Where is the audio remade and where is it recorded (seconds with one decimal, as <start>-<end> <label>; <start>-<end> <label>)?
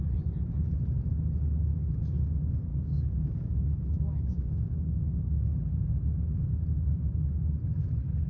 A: 0.0-2.7 recorded; 2.7-5.6 remade; 5.6-8.3 recorded